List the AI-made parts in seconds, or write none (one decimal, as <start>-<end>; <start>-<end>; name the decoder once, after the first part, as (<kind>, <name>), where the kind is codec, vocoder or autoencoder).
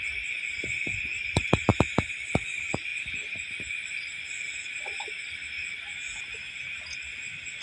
none